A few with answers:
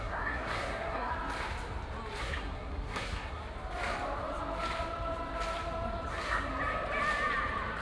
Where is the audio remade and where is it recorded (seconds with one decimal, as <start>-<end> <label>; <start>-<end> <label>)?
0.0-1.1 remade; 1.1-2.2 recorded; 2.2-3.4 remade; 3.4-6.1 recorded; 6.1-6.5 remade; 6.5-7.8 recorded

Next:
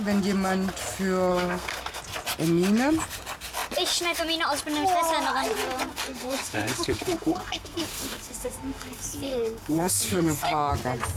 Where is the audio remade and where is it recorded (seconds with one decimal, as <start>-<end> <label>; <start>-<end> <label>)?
0.0-1.3 recorded; 1.3-2.0 remade; 2.0-5.9 recorded; 5.9-10.7 remade; 10.7-11.2 recorded

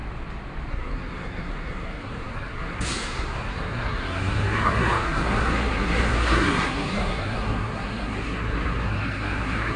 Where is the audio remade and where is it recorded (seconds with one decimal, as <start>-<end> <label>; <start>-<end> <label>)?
0.0-0.7 recorded; 0.7-9.8 remade

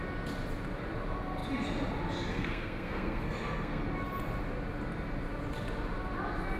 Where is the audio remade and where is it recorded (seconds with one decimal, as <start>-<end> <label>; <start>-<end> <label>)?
0.0-2.3 recorded; 2.3-3.8 remade; 3.8-6.6 recorded

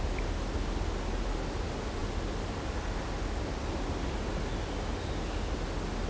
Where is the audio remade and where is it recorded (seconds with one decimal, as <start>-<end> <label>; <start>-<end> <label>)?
0.0-6.1 recorded

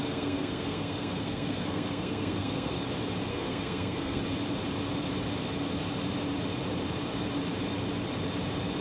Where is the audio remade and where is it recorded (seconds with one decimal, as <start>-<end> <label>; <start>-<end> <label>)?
0.0-2.8 remade; 2.8-3.3 recorded; 3.3-4.2 remade; 4.2-8.8 recorded